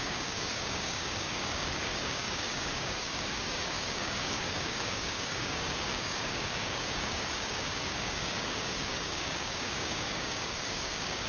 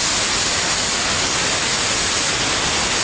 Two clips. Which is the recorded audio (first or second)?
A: second